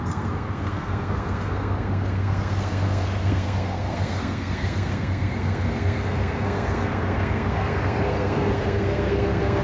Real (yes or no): no